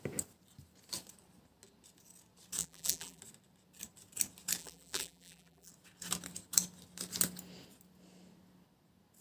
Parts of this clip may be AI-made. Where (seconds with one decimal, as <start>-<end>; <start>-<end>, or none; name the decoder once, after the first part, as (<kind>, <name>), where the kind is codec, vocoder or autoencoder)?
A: 2.6-3.2 (vocoder, BigVGAN v2); 4.6-5.7

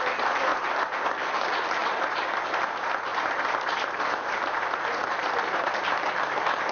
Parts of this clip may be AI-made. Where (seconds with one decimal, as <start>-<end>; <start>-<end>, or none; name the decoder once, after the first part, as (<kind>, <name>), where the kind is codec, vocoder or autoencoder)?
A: 0.5-1.0 (vocoder, BigVGAN v2); 1.8-2.3; 3.1-5.7

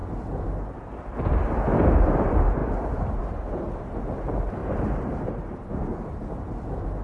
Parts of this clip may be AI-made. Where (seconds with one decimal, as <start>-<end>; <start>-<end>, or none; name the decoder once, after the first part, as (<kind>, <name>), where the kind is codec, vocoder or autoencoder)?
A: 4.6-5.7 (vocoder, BigVGAN v2)

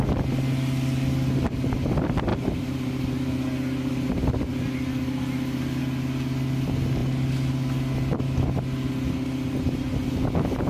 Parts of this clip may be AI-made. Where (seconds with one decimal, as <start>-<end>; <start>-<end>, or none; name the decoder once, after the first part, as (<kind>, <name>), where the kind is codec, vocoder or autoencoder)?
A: 2.3-3.0 (vocoder, BigVGAN v2)

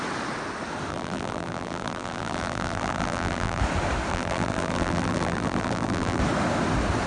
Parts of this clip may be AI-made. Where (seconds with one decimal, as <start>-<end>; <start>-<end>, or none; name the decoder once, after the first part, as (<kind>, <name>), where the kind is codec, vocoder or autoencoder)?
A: 0.9-3.6 (vocoder, BigVGAN v2); 4.1-6.2

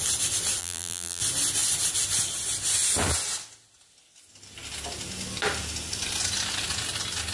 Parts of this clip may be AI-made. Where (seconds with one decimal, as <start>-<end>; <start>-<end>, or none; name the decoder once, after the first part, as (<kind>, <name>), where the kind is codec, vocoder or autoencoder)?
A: 0.6-1.2 (vocoder, BigVGAN v2)

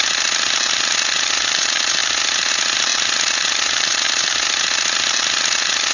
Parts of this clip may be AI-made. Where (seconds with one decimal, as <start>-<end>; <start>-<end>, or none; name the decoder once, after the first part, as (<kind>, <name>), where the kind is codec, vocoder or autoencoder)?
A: none

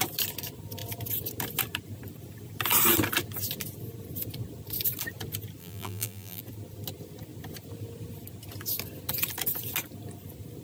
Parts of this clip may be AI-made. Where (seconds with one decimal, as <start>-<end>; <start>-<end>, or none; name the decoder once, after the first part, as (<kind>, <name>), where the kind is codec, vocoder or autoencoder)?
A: 5.6-6.4 (vocoder, BigVGAN v2)